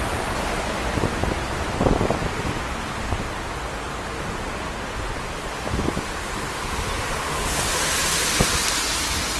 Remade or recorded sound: recorded